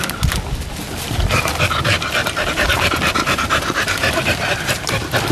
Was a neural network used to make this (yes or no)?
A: no